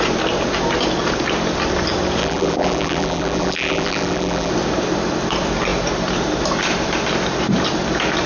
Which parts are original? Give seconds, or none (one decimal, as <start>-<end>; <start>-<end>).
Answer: 0.0-2.2; 4.5-8.3